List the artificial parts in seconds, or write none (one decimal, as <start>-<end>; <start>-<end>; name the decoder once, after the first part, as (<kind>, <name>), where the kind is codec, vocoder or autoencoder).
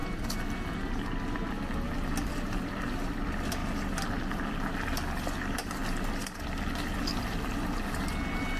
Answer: none